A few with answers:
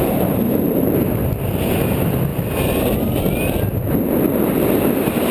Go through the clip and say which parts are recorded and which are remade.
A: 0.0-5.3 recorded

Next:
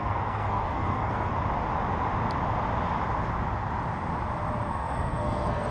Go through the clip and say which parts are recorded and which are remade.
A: 0.0-1.3 remade; 1.3-4.7 recorded; 4.7-5.7 remade

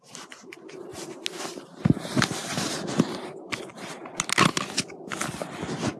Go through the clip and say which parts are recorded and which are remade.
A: 0.0-6.0 recorded